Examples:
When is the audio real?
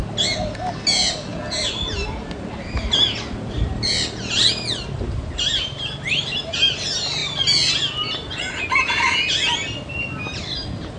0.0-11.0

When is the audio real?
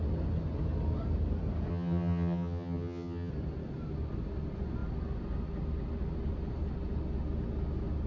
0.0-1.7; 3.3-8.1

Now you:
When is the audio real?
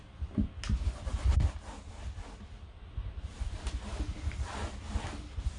0.0-5.6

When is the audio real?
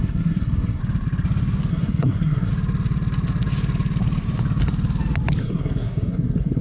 0.8-1.7; 2.5-5.4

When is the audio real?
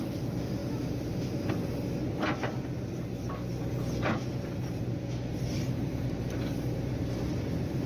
0.6-4.9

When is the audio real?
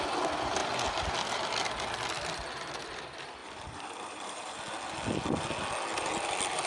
0.0-3.4; 4.6-6.7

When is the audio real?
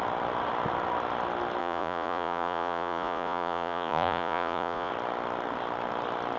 0.0-1.6; 4.9-6.4